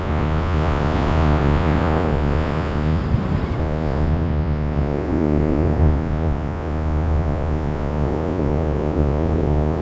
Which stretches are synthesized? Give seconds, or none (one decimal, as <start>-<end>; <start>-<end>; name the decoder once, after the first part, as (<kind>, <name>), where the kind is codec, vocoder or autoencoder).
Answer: 0.0-3.0 (vocoder, Vocos); 3.6-9.8